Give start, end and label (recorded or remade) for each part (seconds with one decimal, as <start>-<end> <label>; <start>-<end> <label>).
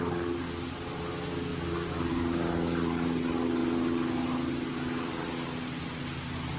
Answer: 0.0-6.6 recorded